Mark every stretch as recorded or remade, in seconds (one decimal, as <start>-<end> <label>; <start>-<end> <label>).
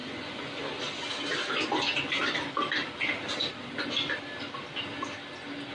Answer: 0.0-0.6 remade; 0.6-5.7 recorded